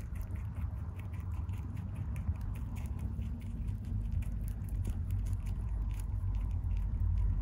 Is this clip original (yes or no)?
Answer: no